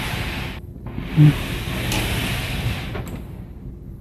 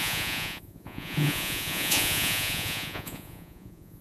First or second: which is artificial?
second